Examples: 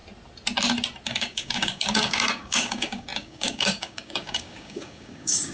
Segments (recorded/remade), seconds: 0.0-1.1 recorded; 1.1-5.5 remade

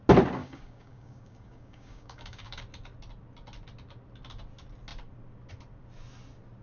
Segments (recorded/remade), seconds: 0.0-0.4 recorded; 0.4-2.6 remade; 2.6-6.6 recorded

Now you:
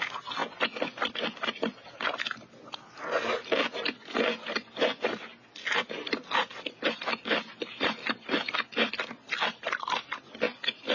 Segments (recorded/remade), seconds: 0.0-10.9 recorded

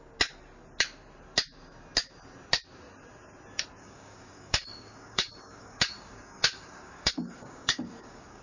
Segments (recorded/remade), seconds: 0.0-3.8 recorded; 3.8-8.4 remade